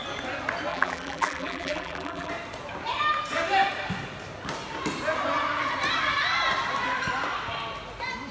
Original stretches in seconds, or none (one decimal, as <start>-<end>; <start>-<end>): 0.0-0.7; 2.3-8.3